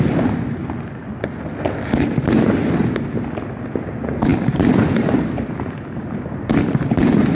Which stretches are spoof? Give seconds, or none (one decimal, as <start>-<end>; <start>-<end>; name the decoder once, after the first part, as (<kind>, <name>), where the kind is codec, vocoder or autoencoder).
4.3-7.3 (vocoder, BigVGAN v2)